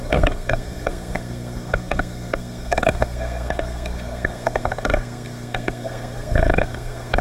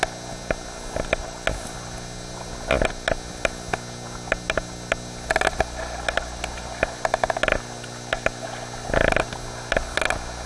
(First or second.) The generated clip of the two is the first